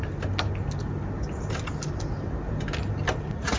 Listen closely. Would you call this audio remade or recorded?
recorded